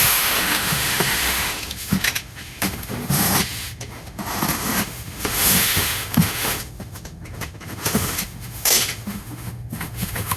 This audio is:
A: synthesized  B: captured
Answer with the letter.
A